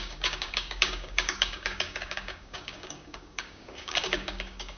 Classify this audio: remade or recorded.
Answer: remade